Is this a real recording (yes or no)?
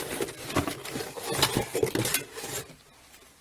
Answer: yes